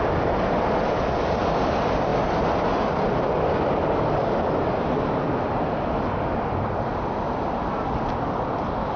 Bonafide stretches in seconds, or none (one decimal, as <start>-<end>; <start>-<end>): 0.0-9.0